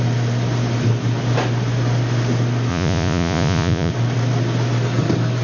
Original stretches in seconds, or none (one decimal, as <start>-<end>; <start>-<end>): 0.0-2.7; 3.9-5.4